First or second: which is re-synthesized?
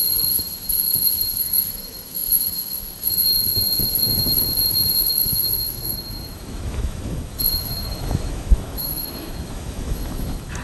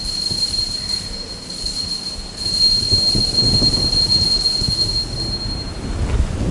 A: first